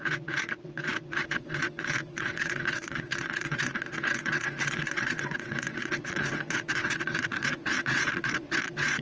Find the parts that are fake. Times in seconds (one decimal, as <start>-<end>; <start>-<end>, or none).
0.0-9.0